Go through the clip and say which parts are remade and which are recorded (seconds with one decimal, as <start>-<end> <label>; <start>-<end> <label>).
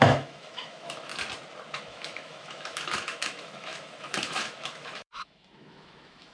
0.0-1.1 remade; 1.1-1.8 recorded; 1.8-6.3 remade